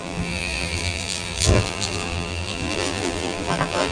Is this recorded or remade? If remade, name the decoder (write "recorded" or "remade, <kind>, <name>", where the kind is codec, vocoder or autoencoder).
remade, vocoder, BigVGAN v2